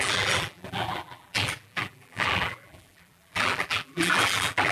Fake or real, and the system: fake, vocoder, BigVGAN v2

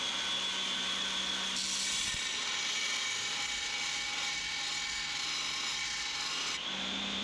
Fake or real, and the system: real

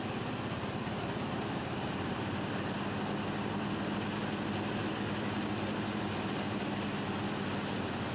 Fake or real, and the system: real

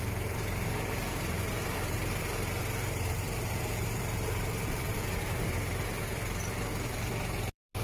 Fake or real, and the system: fake, vocoder, BigVGAN v2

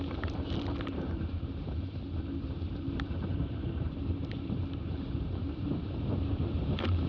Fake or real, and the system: fake, vocoder, BigVGAN v2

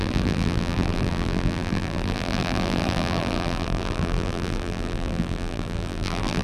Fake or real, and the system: fake, vocoder, BigVGAN v2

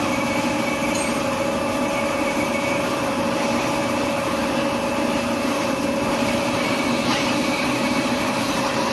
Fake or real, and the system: real